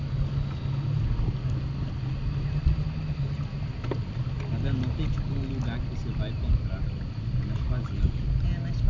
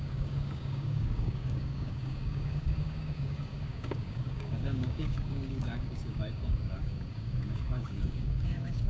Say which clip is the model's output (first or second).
second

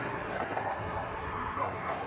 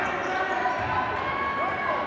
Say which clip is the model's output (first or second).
first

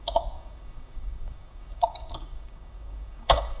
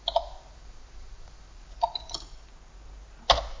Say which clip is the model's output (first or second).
first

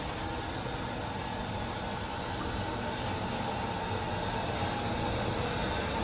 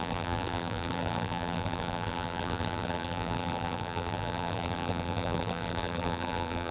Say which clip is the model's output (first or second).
second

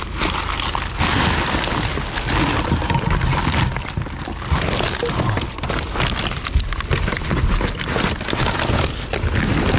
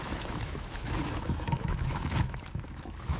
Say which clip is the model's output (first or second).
second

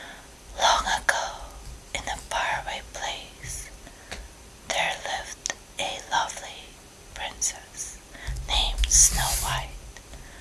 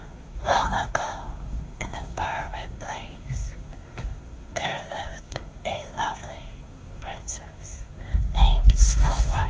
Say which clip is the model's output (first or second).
second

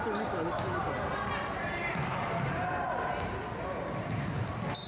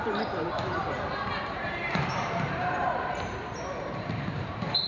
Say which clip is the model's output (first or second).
second